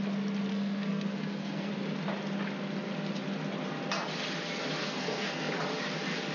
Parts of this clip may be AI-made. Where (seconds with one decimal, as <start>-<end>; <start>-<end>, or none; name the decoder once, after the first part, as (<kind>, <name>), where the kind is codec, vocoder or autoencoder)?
0.5-1.7 (codec, SNAC); 4.8-5.5